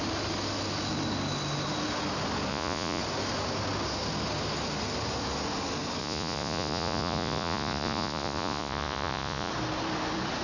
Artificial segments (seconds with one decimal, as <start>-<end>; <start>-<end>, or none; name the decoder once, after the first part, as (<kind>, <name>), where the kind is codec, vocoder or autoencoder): 2.5-3.0 (vocoder, Vocos); 6.0-9.5